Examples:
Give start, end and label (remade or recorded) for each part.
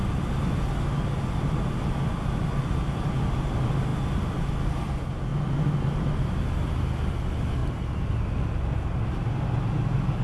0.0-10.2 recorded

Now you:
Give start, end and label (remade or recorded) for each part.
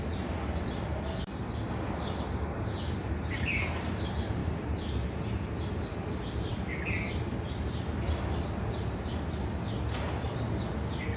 0.0-3.0 recorded; 3.0-3.9 remade; 3.9-4.4 recorded; 4.4-5.6 remade; 5.6-11.2 recorded